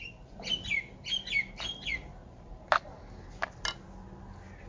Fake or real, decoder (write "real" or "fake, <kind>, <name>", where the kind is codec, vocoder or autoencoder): real